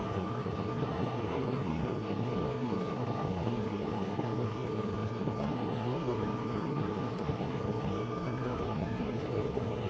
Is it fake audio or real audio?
fake